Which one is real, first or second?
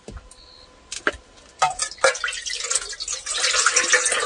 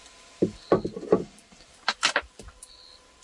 first